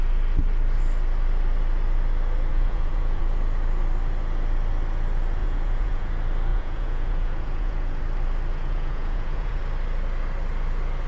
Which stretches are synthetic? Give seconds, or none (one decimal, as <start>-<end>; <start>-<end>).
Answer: 2.5-3.2; 5.4-6.1; 6.5-8.0; 8.5-9.6